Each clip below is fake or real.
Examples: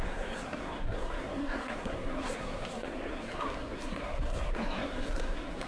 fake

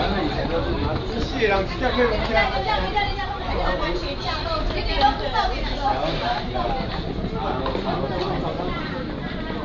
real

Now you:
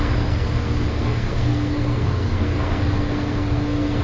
fake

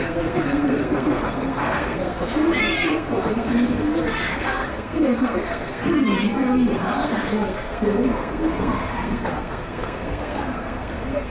fake